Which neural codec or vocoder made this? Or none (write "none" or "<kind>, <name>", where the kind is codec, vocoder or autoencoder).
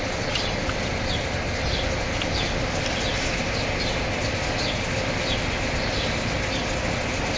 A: none